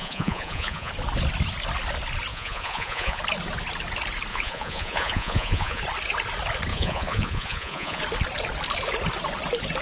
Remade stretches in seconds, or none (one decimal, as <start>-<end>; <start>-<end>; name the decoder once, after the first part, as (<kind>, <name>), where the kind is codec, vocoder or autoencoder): 0.0-0.9 (vocoder, Vocos); 2.3-3.2; 4.3-5.8; 6.7-8.0